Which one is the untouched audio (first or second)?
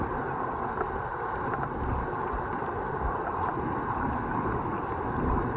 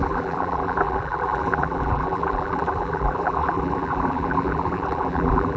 first